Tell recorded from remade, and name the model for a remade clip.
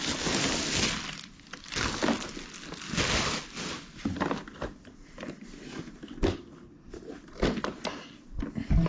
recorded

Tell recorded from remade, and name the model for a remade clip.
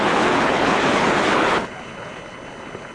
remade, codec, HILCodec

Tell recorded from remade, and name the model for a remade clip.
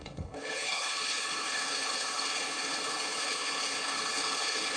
remade, codec, HILCodec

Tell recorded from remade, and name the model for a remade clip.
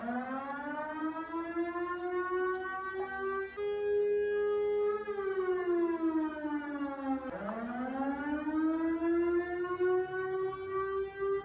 recorded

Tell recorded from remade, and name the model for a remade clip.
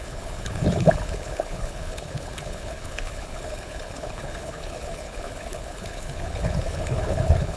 remade, codec, HILCodec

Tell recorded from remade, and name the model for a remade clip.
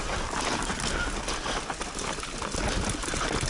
recorded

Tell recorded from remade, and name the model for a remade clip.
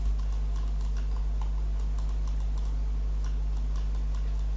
recorded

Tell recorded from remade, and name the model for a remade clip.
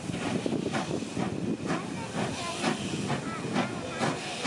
recorded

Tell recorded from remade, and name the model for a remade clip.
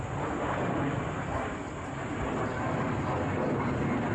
recorded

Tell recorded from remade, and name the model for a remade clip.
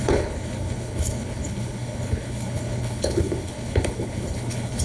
remade, codec, HILCodec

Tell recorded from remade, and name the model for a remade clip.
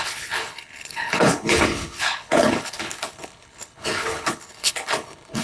remade, codec, HILCodec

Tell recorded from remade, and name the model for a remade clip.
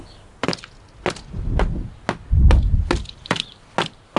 recorded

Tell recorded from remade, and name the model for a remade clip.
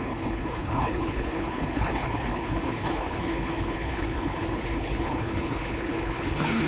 remade, codec, HILCodec